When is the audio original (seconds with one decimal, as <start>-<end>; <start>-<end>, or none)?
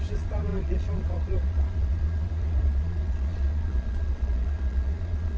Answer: none